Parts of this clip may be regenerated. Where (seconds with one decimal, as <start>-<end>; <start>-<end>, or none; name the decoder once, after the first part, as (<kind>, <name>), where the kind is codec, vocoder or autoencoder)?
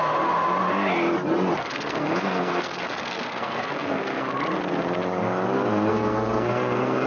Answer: 1.6-4.3 (codec, SNAC); 5.9-7.1